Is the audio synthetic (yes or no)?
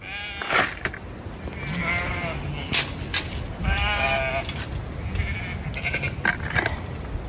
no